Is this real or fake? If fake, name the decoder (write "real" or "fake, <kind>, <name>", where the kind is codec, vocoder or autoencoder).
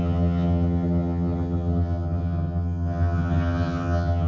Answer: fake, vocoder, HiFi-GAN